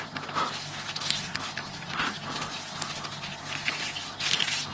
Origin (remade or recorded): recorded